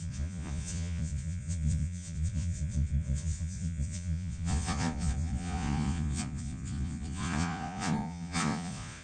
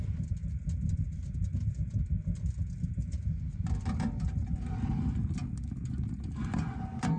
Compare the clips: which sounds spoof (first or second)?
first